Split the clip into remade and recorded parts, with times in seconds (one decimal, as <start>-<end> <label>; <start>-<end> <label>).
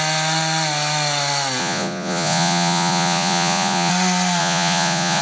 0.0-1.6 recorded; 1.6-3.9 remade; 3.9-4.4 recorded; 4.4-5.2 remade